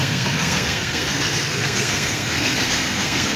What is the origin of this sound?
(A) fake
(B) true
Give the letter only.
A